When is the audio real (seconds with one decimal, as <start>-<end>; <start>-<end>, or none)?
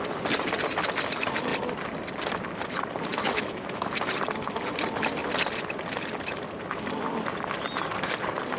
0.0-3.1; 3.9-8.6